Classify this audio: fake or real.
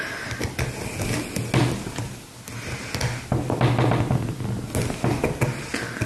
real